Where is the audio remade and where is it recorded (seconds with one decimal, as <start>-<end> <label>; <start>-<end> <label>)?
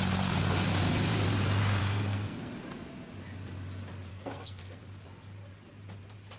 0.0-1.8 recorded; 1.8-2.5 remade; 2.5-4.1 recorded; 4.1-4.8 remade; 4.8-6.4 recorded